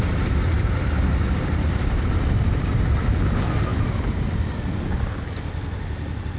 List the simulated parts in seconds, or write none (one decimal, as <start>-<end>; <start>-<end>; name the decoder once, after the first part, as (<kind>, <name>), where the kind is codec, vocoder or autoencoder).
none